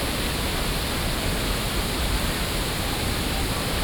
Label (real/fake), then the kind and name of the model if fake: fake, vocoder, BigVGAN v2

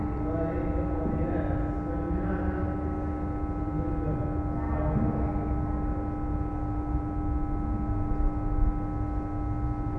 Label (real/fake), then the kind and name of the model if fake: real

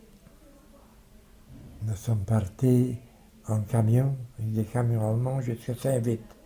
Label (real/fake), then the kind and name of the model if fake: real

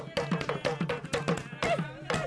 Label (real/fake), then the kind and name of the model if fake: real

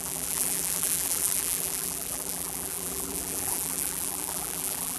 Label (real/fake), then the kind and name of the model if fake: fake, vocoder, BigVGAN v2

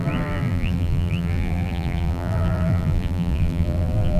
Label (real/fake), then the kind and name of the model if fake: fake, vocoder, BigVGAN v2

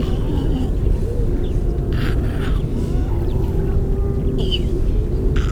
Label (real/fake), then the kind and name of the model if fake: real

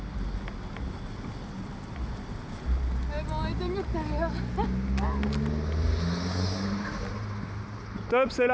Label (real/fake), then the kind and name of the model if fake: real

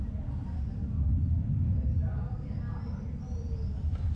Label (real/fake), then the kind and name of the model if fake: real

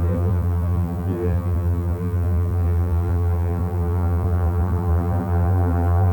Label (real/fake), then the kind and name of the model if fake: fake, vocoder, BigVGAN v2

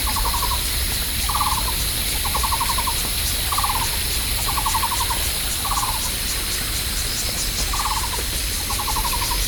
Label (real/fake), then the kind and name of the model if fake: real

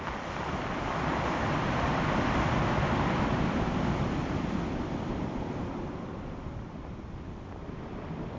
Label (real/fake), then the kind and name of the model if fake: fake, vocoder, BigVGAN v2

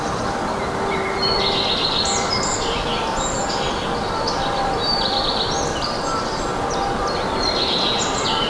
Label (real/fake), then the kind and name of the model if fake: fake, vocoder, BigVGAN v2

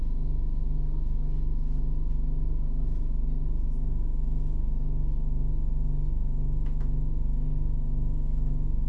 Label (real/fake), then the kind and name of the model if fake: real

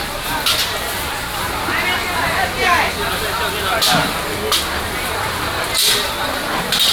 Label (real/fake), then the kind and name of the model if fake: real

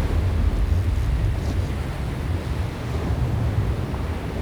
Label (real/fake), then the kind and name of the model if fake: real